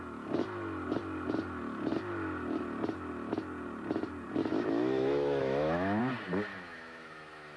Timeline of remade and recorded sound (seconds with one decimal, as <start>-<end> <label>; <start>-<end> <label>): 0.0-4.4 recorded; 4.4-6.0 remade; 6.0-6.5 recorded; 6.5-7.6 remade